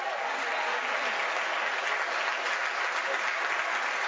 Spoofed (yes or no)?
no